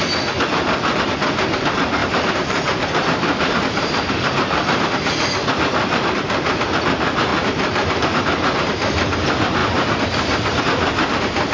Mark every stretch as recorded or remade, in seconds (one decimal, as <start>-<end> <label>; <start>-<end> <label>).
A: 0.0-2.0 recorded; 2.0-5.1 remade; 5.1-7.3 recorded; 7.3-8.2 remade; 8.2-9.6 recorded; 9.6-10.6 remade; 10.6-11.5 recorded